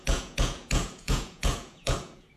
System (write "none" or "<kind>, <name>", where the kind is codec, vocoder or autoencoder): vocoder, Vocos